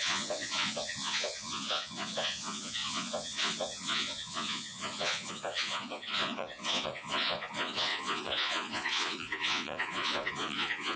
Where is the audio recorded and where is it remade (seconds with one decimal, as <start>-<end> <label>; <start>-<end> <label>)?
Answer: 0.0-11.0 remade

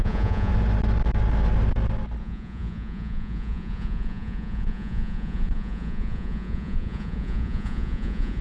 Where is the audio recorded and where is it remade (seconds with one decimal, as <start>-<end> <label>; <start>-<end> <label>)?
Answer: 0.0-0.5 remade; 0.5-2.2 recorded; 2.2-8.4 remade

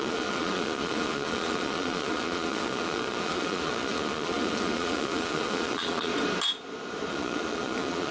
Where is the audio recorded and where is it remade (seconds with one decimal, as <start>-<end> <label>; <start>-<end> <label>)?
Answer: 0.0-6.1 remade; 6.1-7.1 recorded; 7.1-8.1 remade

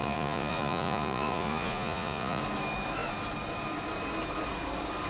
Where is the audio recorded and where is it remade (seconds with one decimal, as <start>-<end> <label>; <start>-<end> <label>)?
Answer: 0.0-2.4 remade; 2.4-5.1 recorded

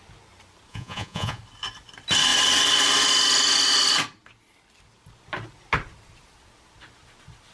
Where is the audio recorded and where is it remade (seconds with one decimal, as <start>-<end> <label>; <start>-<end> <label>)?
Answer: 0.0-0.7 recorded; 0.7-1.4 remade; 1.4-7.5 recorded

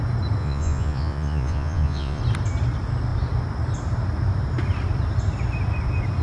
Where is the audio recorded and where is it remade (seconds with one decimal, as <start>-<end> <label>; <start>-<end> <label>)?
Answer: 0.0-0.4 recorded; 0.4-2.2 remade; 2.2-6.2 recorded

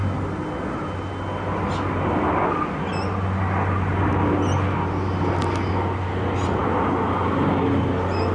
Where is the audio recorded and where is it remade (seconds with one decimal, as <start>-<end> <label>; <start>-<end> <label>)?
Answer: 0.0-8.3 recorded